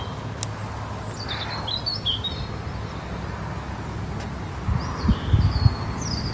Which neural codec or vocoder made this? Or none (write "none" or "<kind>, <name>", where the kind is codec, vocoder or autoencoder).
none